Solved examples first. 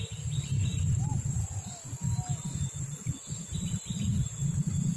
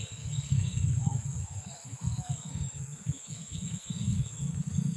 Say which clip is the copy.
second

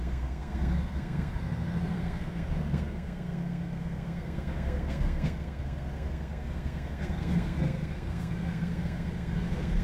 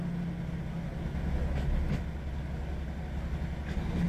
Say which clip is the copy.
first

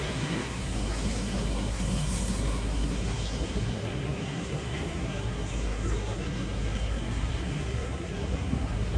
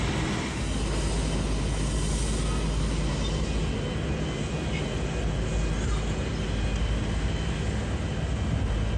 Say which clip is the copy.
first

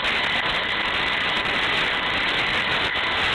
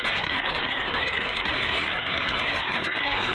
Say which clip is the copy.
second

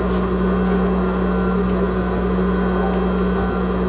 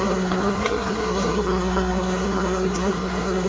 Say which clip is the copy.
second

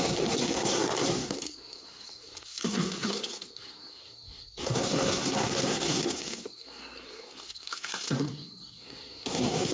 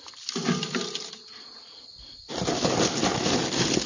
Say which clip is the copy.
first